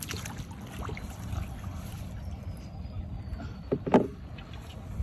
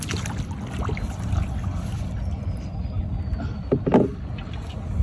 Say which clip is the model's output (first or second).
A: first